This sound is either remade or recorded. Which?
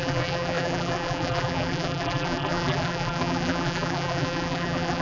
remade